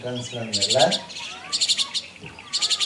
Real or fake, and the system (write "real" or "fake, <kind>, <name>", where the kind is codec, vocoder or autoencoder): real